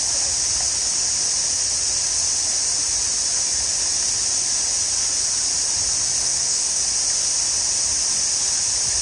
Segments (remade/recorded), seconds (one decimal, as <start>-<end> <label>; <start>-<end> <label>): 0.0-6.2 recorded; 6.2-6.8 remade; 6.8-9.0 recorded